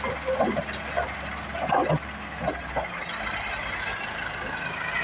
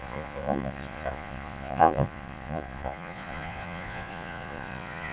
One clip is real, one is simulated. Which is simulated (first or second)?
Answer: second